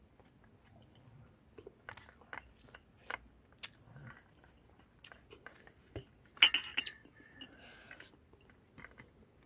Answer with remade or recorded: recorded